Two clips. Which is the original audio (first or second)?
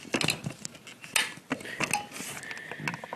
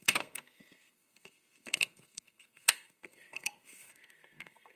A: first